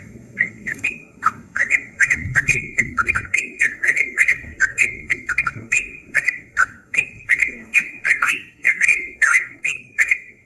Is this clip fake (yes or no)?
yes